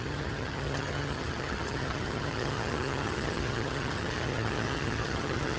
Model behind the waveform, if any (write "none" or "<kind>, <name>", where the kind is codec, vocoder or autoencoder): vocoder, HiFi-GAN